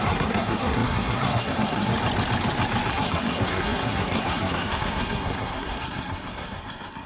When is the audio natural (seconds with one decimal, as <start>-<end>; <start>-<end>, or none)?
1.9-2.9

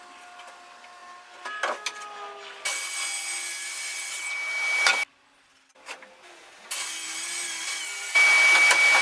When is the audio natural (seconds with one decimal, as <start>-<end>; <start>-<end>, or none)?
0.0-9.0

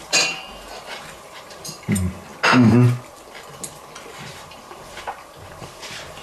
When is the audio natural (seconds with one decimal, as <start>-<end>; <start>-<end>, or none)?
2.3-4.1

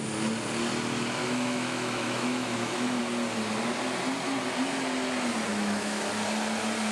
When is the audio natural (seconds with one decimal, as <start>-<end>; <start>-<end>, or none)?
0.0-1.2; 3.0-5.5; 6.1-6.9